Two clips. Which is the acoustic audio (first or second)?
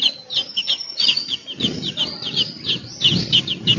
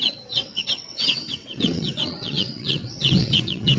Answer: first